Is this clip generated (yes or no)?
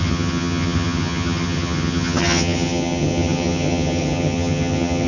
yes